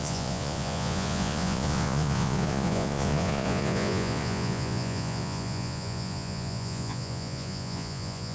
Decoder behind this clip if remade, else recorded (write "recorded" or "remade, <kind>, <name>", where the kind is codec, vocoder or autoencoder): remade, vocoder, Vocos